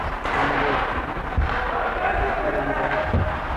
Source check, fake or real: real